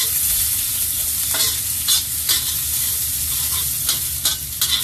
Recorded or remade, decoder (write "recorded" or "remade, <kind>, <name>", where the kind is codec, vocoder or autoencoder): recorded